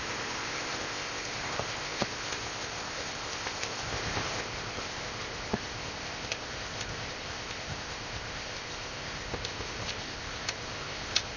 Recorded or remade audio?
remade